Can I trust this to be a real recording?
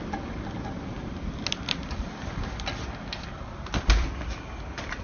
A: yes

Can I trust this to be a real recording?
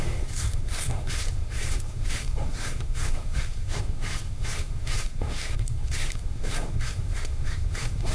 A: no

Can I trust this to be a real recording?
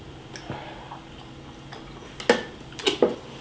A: yes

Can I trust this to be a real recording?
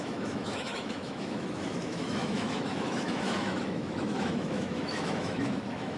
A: no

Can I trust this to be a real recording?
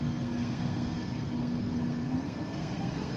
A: no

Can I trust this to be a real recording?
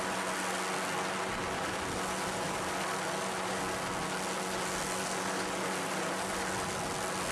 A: yes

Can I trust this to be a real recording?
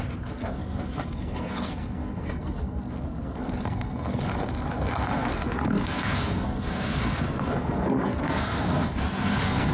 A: no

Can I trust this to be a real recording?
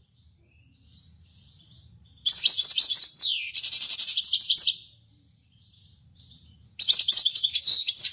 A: no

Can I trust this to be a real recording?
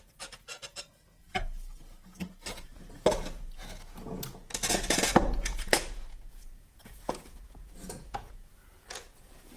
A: no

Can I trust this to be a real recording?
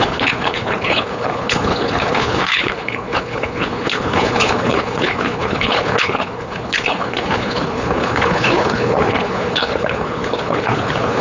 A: no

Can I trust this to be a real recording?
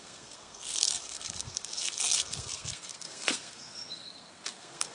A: no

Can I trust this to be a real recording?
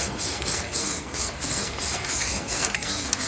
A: no